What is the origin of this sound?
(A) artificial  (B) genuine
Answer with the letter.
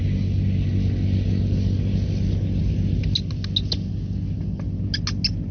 B